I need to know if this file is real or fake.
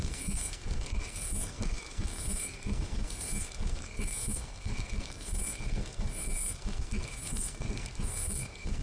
fake